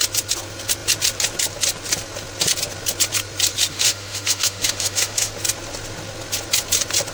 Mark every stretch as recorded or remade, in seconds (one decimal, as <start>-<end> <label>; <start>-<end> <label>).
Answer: 0.0-3.7 recorded; 3.7-5.3 remade; 5.3-7.1 recorded